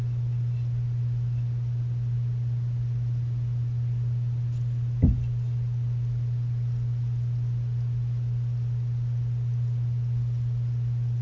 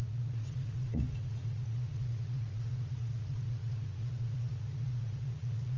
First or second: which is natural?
first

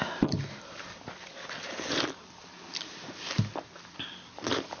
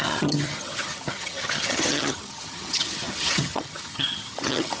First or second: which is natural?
first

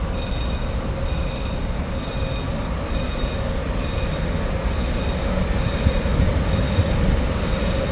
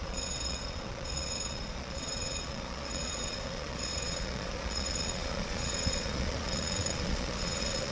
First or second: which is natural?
first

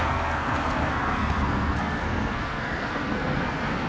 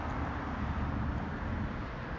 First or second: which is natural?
second